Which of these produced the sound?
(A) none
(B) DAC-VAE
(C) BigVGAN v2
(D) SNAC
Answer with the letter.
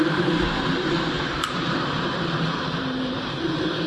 C